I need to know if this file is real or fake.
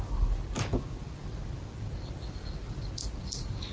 real